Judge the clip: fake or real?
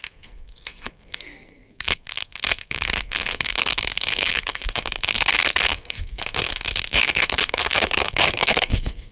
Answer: fake